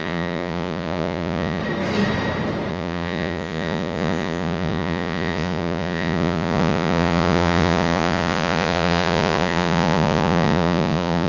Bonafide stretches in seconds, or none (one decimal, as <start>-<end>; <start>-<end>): 1.6-2.7